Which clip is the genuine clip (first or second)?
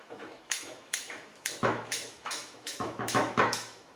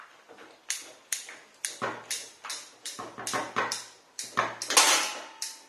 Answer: second